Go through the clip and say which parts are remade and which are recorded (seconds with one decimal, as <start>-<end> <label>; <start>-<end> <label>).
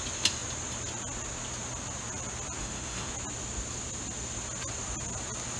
0.0-2.6 recorded; 2.6-3.1 remade; 3.1-5.6 recorded